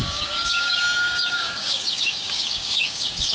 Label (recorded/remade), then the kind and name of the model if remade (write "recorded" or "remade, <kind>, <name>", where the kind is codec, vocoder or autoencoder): remade, codec, DAC